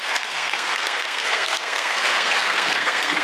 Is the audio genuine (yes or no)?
no